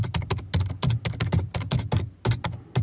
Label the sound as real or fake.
real